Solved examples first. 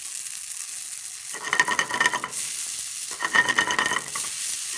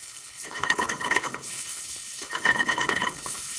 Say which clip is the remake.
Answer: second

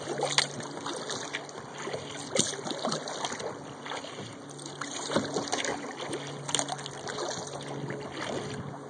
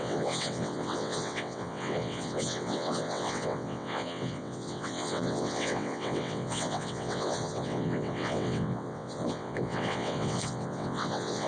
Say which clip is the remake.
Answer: second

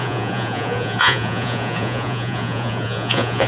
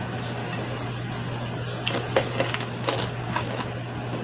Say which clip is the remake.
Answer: first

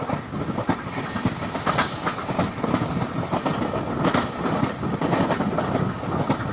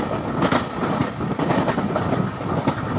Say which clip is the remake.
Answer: first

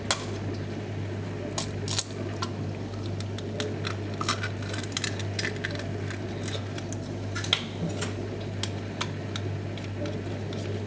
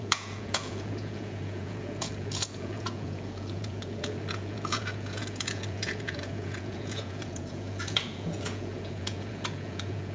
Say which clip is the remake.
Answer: second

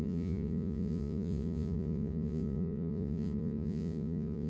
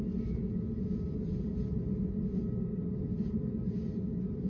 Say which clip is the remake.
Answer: first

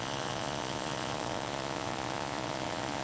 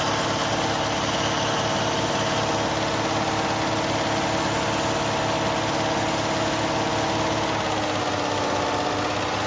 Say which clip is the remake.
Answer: first